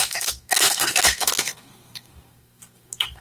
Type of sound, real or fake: fake